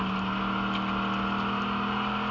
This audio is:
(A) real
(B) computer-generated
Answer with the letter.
A